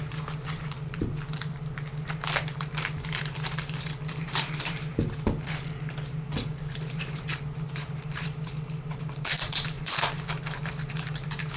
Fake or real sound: fake